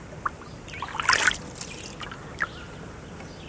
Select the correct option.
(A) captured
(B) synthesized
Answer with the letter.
A